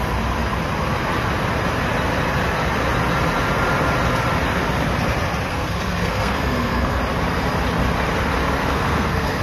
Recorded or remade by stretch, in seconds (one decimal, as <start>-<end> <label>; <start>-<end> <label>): 0.0-5.5 recorded; 5.5-7.0 remade; 7.0-8.6 recorded; 8.6-9.4 remade